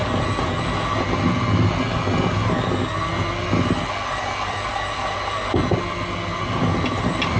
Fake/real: real